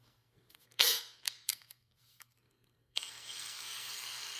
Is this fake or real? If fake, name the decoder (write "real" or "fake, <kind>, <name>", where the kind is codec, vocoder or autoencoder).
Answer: fake, codec, SNAC